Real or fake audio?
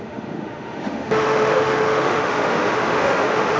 fake